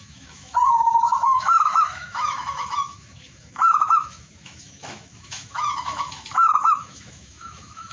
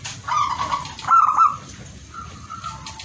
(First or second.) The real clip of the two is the second